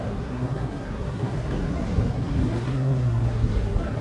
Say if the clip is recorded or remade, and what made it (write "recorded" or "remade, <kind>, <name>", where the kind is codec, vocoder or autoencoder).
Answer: remade, codec, SNAC